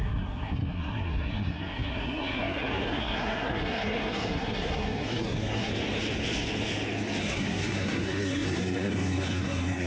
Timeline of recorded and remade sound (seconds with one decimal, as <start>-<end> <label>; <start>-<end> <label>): 0.0-5.7 remade; 5.7-7.2 recorded; 7.2-9.9 remade